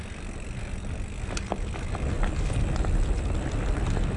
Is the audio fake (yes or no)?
no